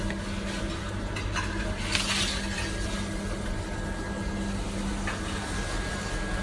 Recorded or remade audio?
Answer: recorded